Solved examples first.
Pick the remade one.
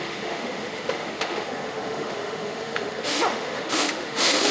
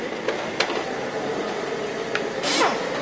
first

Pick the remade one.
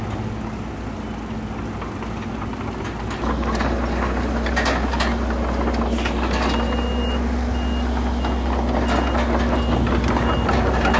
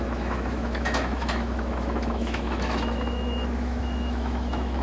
second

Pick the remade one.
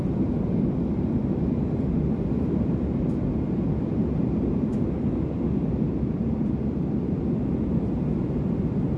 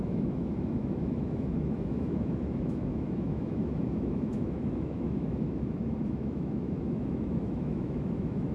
second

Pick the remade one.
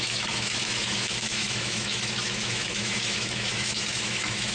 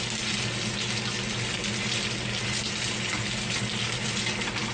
first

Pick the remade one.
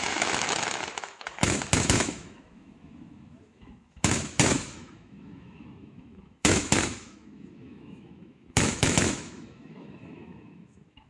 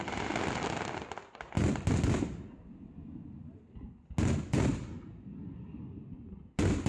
first